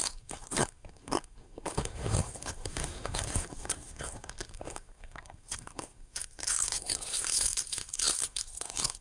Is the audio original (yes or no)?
no